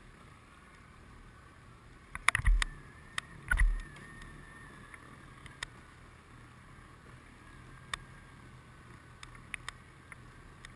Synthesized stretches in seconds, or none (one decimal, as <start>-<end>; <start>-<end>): 0.7-3.5